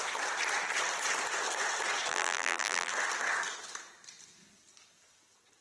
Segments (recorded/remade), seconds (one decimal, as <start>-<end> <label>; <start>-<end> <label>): 0.0-2.1 recorded; 2.1-2.9 remade; 2.9-5.6 recorded